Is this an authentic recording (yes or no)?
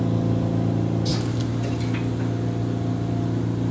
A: yes